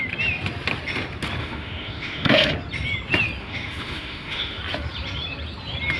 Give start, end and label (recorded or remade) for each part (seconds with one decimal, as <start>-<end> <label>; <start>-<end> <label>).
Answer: 0.0-1.4 recorded; 1.4-2.5 remade; 2.5-3.4 recorded; 3.4-4.6 remade; 4.6-6.0 recorded